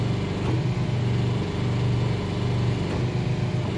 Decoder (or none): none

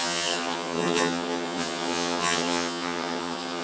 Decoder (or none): vocoder, HiFi-GAN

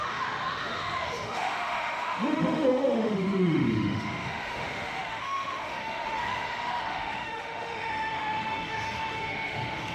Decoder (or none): autoencoder, DAC-VAE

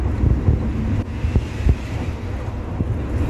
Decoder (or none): none